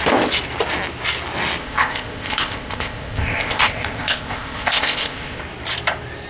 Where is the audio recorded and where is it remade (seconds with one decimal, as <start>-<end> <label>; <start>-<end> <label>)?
0.0-1.6 recorded; 1.6-5.4 remade; 5.4-6.3 recorded